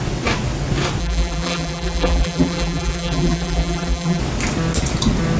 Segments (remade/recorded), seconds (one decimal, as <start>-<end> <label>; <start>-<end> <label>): 0.0-1.0 recorded; 1.0-4.2 remade; 4.2-5.4 recorded